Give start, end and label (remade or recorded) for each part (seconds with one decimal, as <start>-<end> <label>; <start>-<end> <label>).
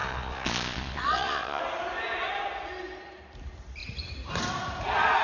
0.0-1.6 remade; 1.6-5.2 recorded